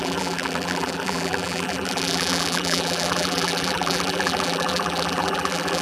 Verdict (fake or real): fake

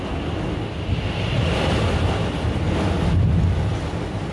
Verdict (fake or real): real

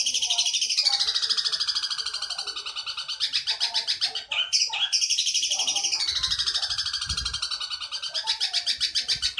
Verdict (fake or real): real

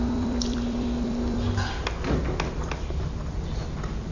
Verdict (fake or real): fake